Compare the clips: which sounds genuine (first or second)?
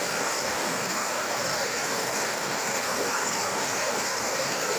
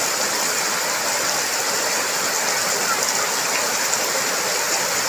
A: second